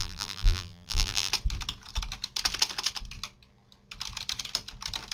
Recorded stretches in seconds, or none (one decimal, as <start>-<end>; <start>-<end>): 1.3-5.1